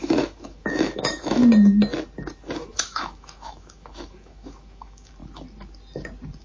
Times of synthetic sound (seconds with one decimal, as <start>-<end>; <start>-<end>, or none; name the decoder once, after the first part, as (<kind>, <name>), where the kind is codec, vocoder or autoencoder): 0.0-1.4 (autoencoder, DAC-VAE); 2.7-5.2